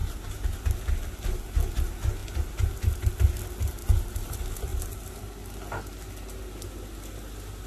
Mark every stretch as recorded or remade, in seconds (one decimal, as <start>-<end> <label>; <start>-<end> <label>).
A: 0.0-3.8 recorded; 3.8-4.3 remade; 4.3-4.7 recorded; 4.7-5.2 remade; 5.2-7.7 recorded